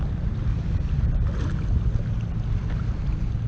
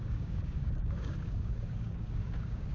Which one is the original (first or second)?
first